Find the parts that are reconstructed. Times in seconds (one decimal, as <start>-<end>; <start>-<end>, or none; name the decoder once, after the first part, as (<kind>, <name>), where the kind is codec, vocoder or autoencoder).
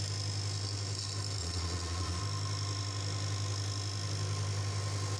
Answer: 1.4-2.2 (vocoder, Vocos)